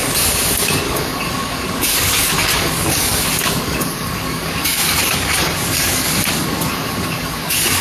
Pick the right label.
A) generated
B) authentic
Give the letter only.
A